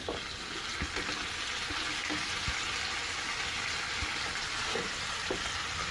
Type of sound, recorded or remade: recorded